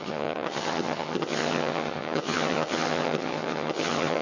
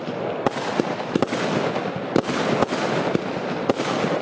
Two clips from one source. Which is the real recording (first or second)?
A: second